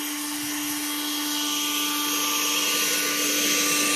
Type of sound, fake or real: real